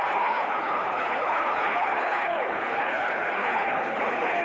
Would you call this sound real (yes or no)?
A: no